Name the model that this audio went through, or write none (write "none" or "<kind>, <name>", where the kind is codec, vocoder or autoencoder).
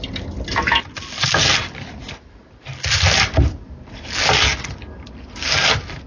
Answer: none